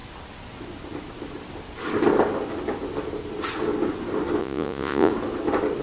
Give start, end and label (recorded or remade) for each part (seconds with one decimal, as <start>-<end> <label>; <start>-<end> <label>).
0.0-4.4 recorded; 4.4-5.1 remade; 5.1-5.8 recorded

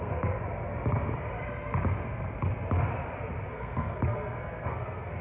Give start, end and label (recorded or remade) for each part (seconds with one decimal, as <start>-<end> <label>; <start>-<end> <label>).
0.0-0.4 remade; 0.4-3.5 recorded; 3.5-5.2 remade